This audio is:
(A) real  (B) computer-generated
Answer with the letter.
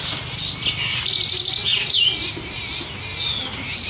B